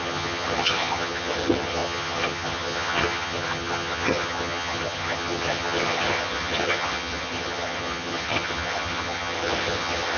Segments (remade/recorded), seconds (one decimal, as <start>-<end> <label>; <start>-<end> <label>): 0.0-10.2 remade